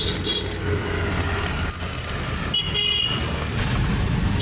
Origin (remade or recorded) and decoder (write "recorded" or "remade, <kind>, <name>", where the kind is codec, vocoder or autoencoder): recorded